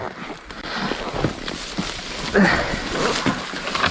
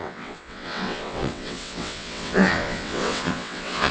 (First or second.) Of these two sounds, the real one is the first